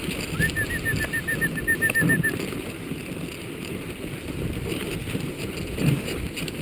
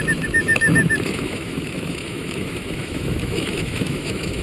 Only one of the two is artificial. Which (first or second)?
second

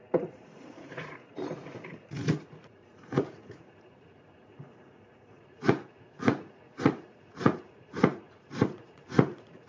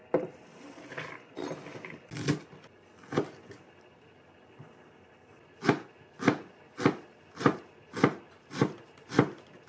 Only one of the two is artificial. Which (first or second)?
first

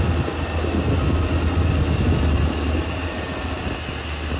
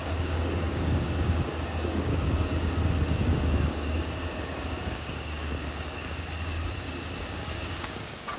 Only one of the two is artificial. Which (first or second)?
second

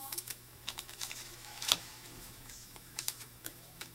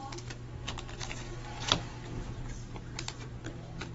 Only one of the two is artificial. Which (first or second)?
first